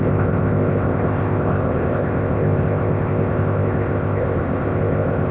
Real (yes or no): no